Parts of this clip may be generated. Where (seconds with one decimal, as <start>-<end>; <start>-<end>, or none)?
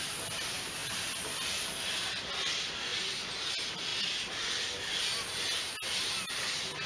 none